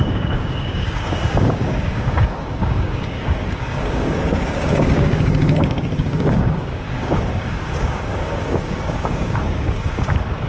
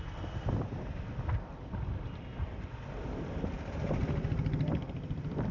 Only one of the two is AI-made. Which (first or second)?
first